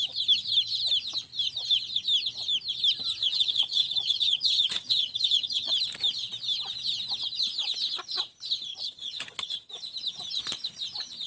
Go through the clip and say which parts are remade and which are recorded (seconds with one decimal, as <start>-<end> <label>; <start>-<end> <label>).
0.0-3.2 recorded; 3.2-5.7 remade; 5.7-8.7 recorded; 8.7-9.7 remade; 9.7-11.3 recorded